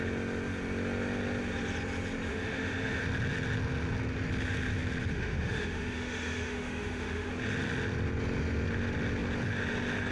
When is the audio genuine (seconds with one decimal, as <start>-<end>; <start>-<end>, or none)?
0.0-2.3; 3.0-5.1; 7.3-10.1